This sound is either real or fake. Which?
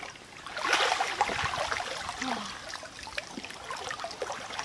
real